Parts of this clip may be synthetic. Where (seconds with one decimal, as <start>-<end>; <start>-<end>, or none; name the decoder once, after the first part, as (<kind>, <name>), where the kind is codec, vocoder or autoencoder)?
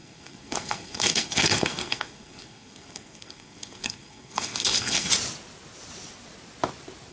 0.0-5.1 (codec, SNAC)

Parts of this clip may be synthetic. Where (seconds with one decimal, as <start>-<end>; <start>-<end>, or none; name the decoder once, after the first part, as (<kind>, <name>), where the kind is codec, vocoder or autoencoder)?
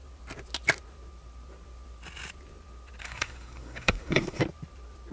3.0-4.4 (codec, SNAC)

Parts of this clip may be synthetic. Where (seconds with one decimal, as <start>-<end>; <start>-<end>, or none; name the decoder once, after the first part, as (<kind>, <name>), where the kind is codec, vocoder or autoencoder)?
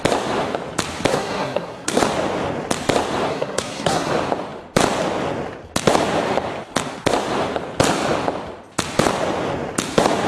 1.1-2.0 (codec, SNAC); 3.3-4.1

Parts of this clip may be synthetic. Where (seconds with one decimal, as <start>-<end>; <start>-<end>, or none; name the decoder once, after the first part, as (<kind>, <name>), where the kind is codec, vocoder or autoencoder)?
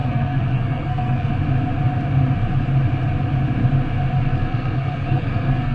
0.0-1.3 (codec, SNAC); 4.2-5.7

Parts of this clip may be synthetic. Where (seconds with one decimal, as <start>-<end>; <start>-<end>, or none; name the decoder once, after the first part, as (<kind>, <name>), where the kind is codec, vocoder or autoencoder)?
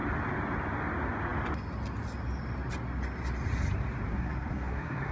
4.1-5.1 (codec, SNAC)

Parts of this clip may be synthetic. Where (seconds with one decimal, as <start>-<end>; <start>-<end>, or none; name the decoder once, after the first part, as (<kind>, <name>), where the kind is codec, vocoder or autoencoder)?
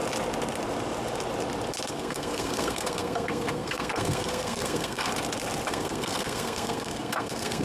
1.9-5.1 (codec, SNAC); 5.7-7.6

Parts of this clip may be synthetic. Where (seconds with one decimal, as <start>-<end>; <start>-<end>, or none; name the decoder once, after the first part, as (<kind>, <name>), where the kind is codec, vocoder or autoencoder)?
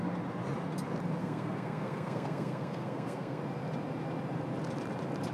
1.2-3.4 (codec, SNAC)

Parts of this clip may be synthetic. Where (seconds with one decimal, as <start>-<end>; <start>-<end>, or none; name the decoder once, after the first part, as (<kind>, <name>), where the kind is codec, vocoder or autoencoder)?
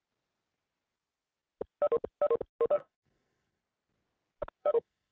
2.7-3.6 (codec, SNAC); 4.6-5.1